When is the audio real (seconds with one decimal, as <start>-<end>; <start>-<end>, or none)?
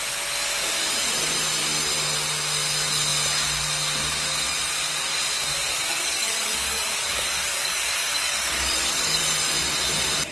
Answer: 0.0-5.9; 9.2-10.3